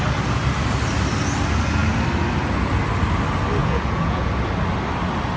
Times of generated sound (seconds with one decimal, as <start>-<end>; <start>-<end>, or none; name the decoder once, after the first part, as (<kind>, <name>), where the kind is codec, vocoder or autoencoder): 3.6-4.3 (vocoder, Vocos)